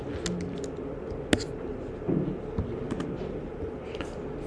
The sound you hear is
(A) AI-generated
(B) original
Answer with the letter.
B